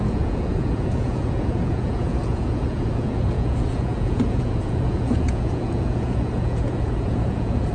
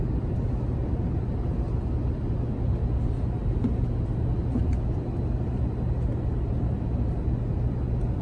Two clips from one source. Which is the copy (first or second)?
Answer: first